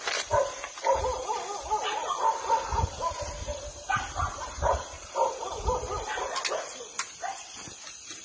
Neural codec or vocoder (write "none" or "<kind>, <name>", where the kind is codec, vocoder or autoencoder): none